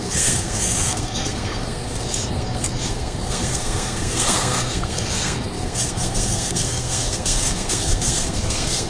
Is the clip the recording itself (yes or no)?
no